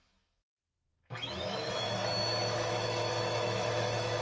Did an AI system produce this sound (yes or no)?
yes